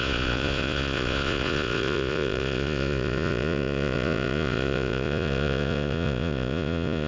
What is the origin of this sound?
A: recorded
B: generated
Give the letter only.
B